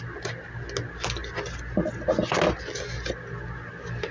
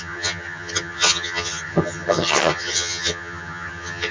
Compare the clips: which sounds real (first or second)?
first